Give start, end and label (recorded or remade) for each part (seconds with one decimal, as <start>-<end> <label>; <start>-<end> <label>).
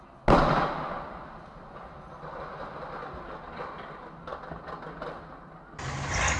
0.0-6.4 recorded